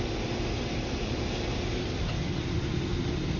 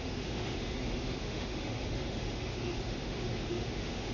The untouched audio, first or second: first